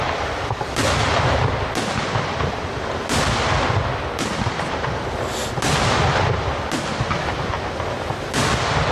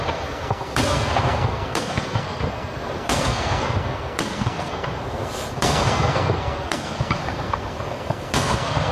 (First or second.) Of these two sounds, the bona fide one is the first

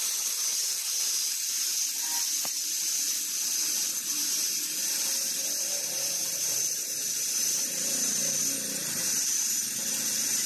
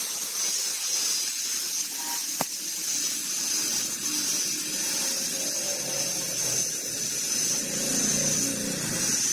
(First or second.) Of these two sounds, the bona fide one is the second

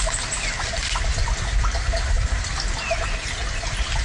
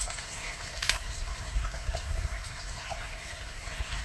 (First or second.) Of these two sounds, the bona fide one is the first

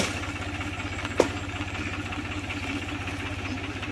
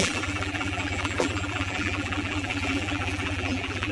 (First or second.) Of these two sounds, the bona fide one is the first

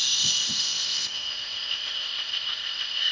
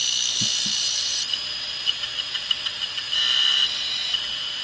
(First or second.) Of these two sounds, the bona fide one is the second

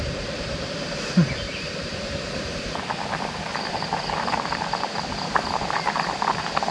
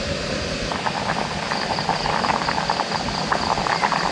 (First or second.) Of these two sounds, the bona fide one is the second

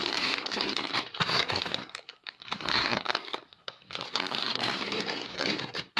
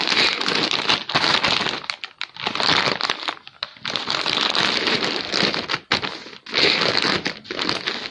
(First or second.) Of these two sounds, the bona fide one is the second